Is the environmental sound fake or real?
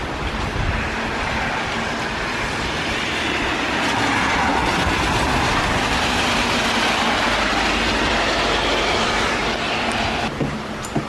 real